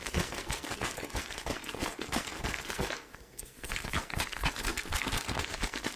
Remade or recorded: remade